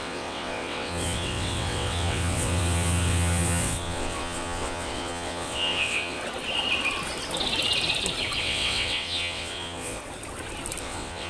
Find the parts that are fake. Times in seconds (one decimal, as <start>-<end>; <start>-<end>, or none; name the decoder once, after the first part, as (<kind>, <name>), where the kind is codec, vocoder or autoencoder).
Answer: 0.0-6.2 (vocoder, WaveNeXt); 8.4-10.0; 10.8-11.3